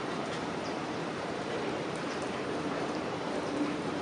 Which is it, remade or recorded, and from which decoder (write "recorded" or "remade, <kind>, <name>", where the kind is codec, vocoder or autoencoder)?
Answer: remade, vocoder, BigVGAN v2